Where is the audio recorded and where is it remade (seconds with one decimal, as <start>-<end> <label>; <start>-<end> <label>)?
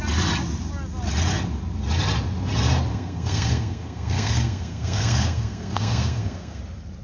0.0-2.9 recorded; 2.9-6.6 remade; 6.6-7.0 recorded